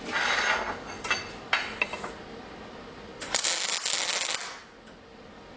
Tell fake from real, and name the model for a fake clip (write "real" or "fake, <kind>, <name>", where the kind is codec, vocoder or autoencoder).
real